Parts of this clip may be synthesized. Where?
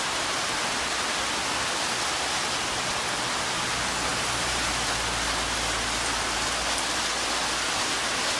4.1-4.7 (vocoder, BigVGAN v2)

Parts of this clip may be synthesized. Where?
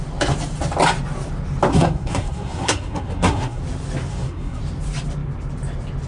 1.7-3.6 (codec, SNAC); 4.1-4.6